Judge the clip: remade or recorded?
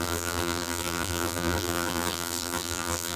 remade